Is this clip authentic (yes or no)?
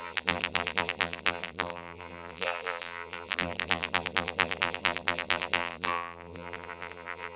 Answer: no